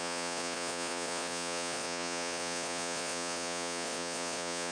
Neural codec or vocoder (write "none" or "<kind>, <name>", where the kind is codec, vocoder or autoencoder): vocoder, Vocos